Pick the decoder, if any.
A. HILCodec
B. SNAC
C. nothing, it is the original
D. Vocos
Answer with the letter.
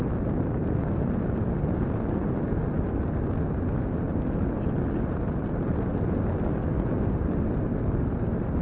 C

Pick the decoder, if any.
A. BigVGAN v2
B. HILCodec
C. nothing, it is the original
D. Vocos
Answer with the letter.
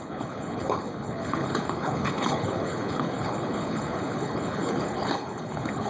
B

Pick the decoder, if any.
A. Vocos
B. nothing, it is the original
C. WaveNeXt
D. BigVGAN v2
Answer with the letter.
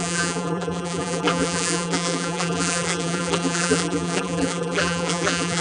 D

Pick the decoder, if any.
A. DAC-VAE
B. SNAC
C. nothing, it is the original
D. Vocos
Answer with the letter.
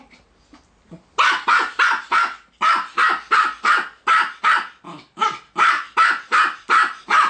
C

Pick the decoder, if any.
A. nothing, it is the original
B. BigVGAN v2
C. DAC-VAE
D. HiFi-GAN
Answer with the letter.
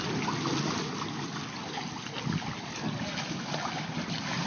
A